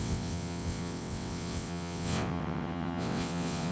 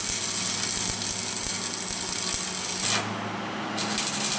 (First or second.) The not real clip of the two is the first